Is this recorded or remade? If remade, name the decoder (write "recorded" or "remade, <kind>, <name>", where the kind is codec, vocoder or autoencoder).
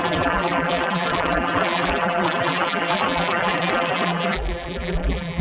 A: remade, vocoder, BigVGAN v2